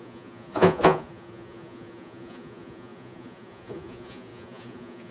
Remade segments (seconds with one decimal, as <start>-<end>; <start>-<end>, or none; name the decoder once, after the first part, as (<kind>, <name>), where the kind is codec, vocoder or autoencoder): 0.0-5.1 (vocoder, Vocos)